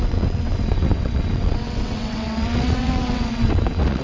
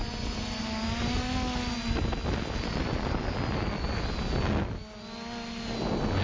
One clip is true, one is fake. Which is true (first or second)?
second